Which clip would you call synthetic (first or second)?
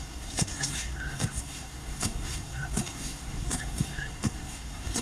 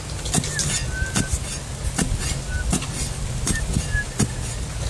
first